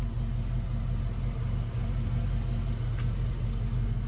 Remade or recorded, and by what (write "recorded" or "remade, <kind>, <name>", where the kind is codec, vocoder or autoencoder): recorded